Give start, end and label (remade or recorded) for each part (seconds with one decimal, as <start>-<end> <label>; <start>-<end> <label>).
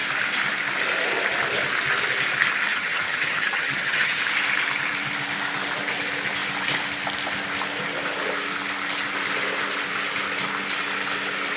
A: 0.0-2.7 recorded; 2.7-4.2 remade; 4.2-11.6 recorded